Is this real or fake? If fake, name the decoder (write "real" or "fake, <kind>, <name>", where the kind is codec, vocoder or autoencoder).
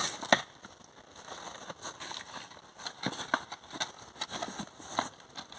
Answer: real